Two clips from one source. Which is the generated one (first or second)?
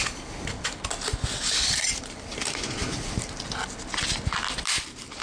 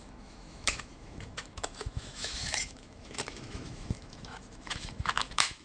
second